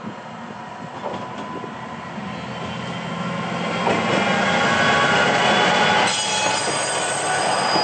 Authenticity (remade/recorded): recorded